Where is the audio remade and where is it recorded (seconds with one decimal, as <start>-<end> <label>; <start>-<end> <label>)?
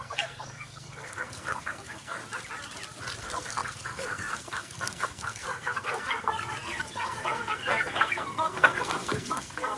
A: 0.0-2.2 remade; 2.2-3.2 recorded; 3.2-9.8 remade